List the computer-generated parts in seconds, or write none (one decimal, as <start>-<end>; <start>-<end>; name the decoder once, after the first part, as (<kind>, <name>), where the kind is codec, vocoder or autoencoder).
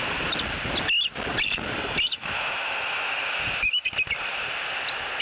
none